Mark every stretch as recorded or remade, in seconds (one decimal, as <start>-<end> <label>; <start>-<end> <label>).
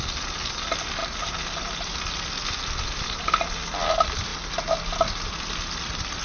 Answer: 0.0-6.2 recorded